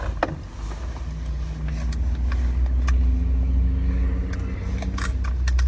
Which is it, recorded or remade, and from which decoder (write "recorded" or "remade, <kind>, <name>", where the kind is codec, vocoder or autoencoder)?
recorded